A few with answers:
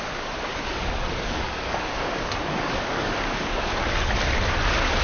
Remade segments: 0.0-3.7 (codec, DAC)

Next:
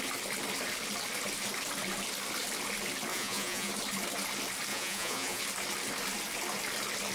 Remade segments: 3.1-3.7 (vocoder, Vocos); 4.7-5.4

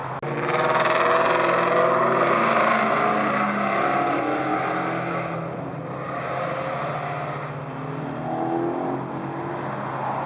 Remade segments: none

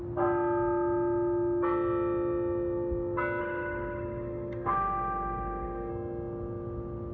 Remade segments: 3.4-5.9 (autoencoder, DAC-VAE)